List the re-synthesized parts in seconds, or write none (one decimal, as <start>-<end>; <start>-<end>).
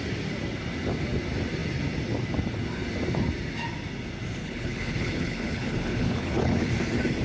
4.4-6.7